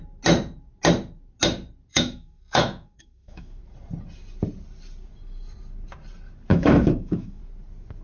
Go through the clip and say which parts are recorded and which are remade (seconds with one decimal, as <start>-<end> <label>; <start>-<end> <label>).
0.0-1.9 recorded; 1.9-3.6 remade; 3.6-6.5 recorded; 6.5-7.4 remade; 7.4-8.0 recorded